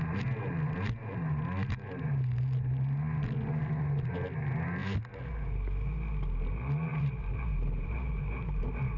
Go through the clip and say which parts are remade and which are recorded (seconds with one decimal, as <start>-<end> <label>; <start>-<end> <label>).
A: 0.0-6.9 recorded; 6.9-9.0 remade